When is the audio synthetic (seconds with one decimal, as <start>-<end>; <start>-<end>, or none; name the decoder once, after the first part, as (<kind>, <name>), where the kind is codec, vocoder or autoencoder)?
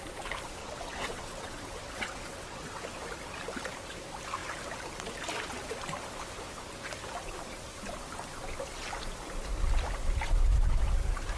0.6-2.8 (vocoder, WaveNeXt)